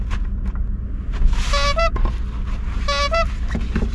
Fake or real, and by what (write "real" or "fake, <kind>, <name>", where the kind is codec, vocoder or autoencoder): real